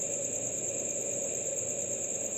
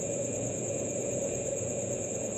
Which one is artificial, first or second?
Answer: second